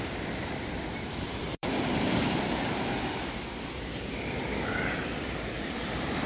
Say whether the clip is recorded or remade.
remade